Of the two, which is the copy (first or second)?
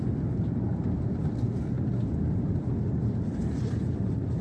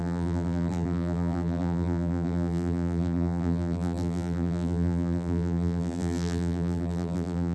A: second